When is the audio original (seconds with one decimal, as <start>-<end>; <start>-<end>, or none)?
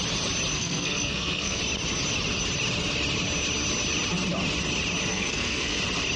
0.0-0.5; 1.6-5.1; 5.8-6.2